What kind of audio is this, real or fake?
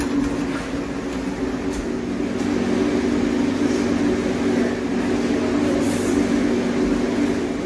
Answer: real